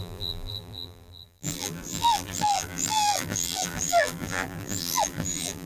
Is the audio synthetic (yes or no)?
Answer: yes